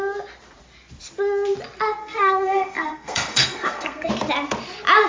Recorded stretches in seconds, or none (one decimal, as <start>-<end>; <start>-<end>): 0.0-2.0; 4.1-5.1